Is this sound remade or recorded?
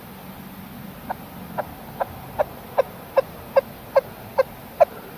recorded